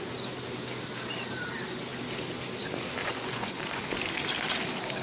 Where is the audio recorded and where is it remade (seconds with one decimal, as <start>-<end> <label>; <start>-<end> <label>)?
0.0-3.0 recorded; 3.0-4.0 remade; 4.0-5.0 recorded